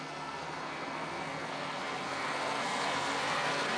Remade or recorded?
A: remade